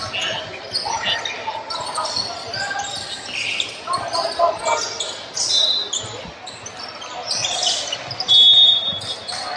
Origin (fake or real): real